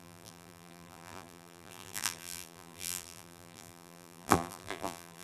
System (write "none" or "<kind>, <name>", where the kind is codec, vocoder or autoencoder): vocoder, BigVGAN v2